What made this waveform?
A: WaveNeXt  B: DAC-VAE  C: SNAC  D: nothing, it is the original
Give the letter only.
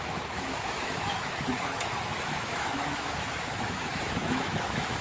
B